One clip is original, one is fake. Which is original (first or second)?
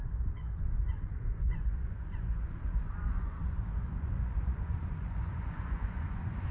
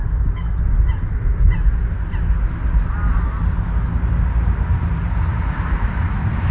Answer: second